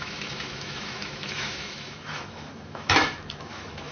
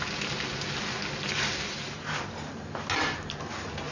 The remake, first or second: first